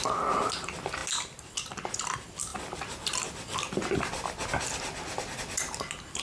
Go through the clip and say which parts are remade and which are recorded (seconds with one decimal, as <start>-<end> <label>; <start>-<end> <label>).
0.0-6.2 recorded